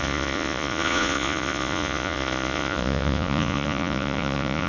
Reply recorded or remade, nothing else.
remade